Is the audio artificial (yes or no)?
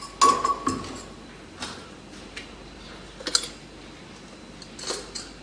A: no